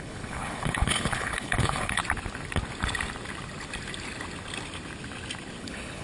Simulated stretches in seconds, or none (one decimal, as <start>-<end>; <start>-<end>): 0.0-2.0; 5.6-6.0